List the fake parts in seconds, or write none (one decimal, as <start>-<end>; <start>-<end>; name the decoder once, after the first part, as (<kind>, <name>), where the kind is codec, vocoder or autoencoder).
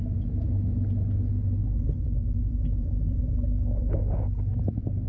1.6-5.1 (vocoder, BigVGAN v2)